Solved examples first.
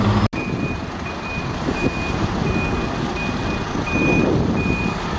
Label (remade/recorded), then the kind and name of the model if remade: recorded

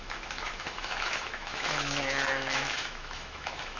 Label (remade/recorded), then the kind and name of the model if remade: remade, autoencoder, DAC-VAE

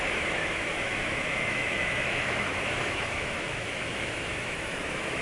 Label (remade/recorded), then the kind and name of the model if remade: remade, autoencoder, DAC-VAE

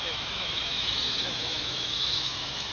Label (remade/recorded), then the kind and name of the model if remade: remade, autoencoder, DAC-VAE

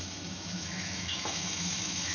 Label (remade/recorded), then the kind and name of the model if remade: remade, autoencoder, DAC-VAE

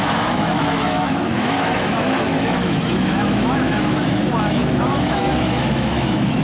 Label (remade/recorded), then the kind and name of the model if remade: remade, autoencoder, DAC-VAE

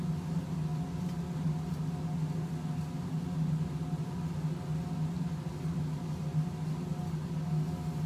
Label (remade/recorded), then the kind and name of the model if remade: recorded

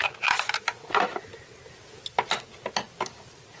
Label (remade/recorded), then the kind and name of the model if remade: recorded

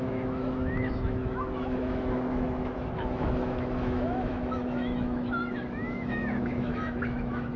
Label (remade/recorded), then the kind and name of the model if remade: remade, autoencoder, DAC-VAE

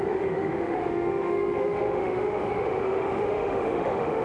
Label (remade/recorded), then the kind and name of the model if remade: remade, autoencoder, DAC-VAE